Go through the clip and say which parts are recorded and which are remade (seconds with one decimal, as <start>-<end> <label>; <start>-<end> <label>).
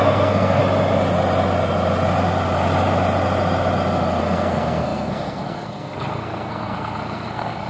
0.0-0.6 remade; 0.6-4.2 recorded; 4.2-7.7 remade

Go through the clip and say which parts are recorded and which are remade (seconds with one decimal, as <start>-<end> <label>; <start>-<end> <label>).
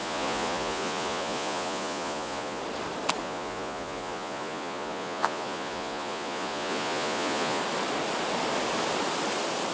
0.0-2.6 remade; 2.6-3.2 recorded; 3.2-7.6 remade; 7.6-9.7 recorded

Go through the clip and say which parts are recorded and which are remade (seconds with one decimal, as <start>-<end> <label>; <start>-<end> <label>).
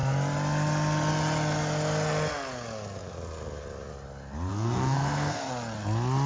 0.0-4.5 recorded; 4.5-5.5 remade; 5.5-6.3 recorded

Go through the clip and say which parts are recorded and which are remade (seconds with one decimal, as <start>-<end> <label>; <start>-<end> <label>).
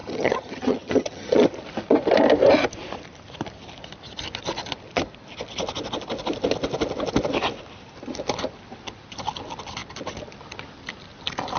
0.0-1.5 remade; 1.5-11.6 recorded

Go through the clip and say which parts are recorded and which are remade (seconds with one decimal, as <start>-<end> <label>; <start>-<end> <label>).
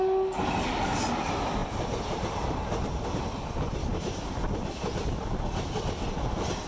0.0-1.6 recorded; 1.6-3.2 remade; 3.2-3.9 recorded; 3.9-4.5 remade; 4.5-6.7 recorded